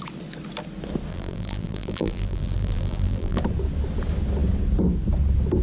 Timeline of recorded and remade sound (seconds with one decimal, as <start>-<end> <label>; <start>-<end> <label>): 0.0-1.1 recorded; 1.1-3.4 remade; 3.4-5.6 recorded